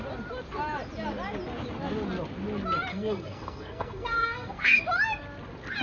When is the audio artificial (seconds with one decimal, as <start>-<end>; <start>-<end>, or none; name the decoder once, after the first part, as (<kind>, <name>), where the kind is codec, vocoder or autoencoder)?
2.9-4.8 (codec, SNAC)